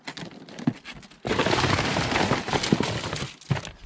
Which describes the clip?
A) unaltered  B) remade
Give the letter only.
A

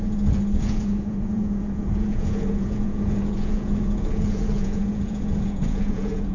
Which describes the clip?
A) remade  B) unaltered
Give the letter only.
A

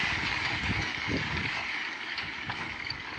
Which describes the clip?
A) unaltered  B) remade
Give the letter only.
B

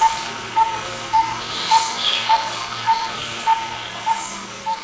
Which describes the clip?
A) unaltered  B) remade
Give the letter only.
B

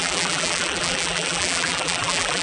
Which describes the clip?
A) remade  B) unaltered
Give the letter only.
A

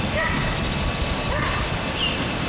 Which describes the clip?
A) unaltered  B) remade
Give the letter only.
A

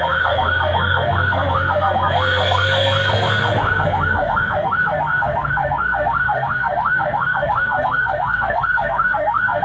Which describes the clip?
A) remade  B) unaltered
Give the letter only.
A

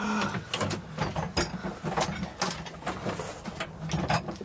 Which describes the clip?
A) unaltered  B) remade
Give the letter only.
A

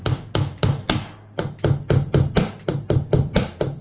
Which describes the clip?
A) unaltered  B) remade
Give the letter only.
A